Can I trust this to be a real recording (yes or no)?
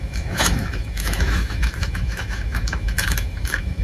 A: no